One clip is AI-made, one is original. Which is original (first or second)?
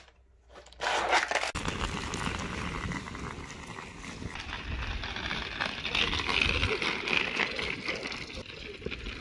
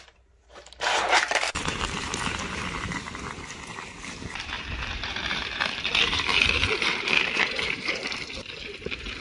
first